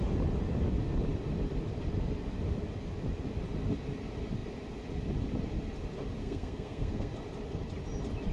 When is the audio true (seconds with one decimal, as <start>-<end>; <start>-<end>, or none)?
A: 0.0-6.2; 7.1-8.3